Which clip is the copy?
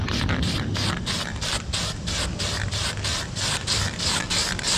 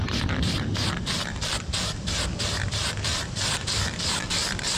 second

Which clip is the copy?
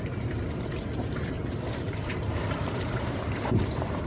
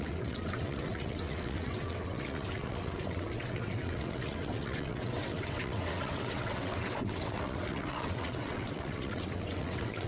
second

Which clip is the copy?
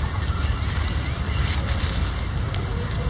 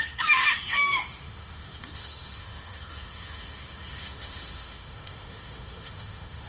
second